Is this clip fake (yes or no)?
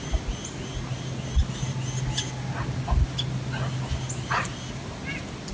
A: no